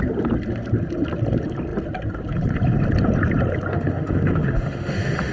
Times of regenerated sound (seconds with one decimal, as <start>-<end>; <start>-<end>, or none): 3.7-5.3